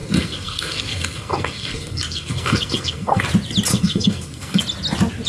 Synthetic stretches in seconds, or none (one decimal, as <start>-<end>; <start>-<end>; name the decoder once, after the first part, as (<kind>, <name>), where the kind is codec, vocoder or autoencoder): 0.0-3.2 (codec, SNAC); 3.7-4.6